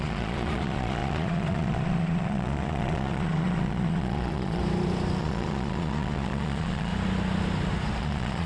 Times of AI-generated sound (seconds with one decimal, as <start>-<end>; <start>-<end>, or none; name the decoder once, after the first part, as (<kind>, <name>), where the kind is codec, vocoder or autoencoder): 0.0-4.6 (vocoder, Vocos); 5.2-6.9; 8.0-8.5